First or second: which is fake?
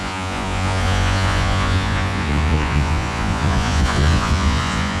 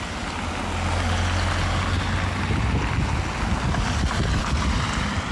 first